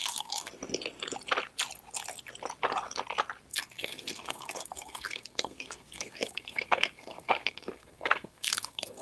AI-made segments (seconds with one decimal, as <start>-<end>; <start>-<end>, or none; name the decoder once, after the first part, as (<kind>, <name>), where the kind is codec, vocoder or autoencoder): 0.0-0.5 (codec, SNAC); 3.5-9.0